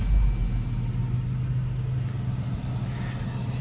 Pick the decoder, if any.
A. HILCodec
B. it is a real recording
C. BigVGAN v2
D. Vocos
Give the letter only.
B